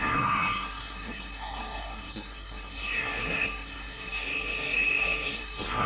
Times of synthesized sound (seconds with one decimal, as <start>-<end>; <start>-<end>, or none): 0.0-5.9